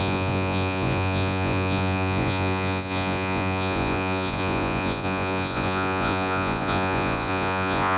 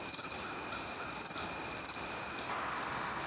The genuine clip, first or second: second